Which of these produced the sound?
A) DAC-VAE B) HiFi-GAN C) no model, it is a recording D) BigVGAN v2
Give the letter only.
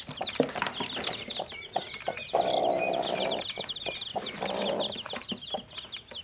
C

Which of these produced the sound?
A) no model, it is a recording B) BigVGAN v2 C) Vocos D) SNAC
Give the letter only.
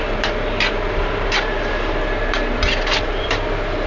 B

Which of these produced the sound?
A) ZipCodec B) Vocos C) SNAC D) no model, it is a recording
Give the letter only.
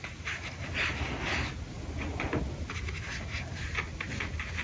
D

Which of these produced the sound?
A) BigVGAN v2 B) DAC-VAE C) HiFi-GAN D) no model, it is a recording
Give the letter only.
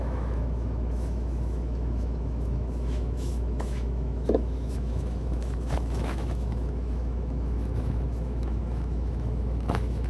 B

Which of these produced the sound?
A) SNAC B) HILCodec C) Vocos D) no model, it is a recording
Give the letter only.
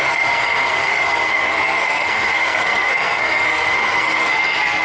A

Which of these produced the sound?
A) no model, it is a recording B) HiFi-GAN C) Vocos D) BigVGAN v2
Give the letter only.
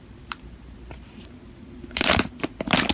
D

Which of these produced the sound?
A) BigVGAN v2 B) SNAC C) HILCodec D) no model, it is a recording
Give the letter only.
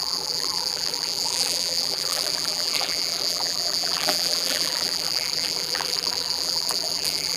A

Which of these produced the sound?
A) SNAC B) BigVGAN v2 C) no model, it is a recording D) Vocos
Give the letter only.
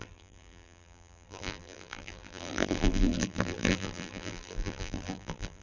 B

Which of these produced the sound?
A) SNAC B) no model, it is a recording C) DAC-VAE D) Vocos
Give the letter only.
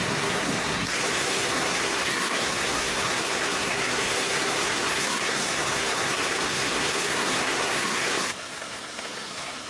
A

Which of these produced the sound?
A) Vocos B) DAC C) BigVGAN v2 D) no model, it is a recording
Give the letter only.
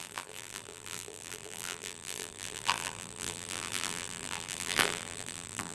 C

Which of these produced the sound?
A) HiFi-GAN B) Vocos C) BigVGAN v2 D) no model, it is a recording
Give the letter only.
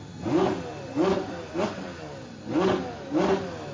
D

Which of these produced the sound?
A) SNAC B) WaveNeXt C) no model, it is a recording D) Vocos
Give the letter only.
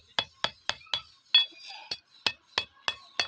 C